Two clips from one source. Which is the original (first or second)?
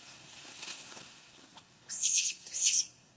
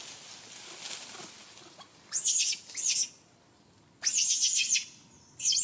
second